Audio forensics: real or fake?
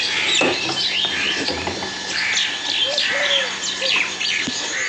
real